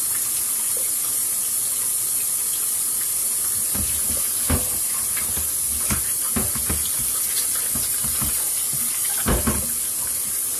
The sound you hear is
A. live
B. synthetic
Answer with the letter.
A